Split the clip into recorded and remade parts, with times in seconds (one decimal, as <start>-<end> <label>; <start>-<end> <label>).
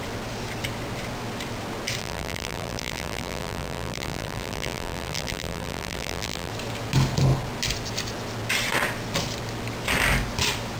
0.0-2.0 recorded; 2.0-6.5 remade; 6.5-10.8 recorded